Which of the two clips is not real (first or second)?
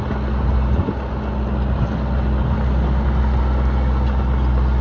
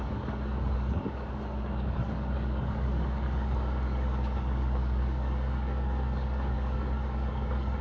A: second